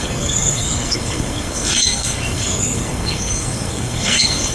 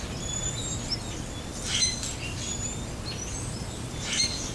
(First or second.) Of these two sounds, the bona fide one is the second